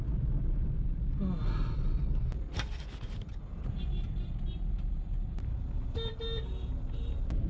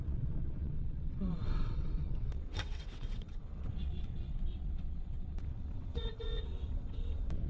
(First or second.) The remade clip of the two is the second